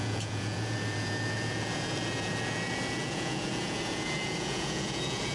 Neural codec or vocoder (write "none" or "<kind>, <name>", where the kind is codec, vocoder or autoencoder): vocoder, Vocos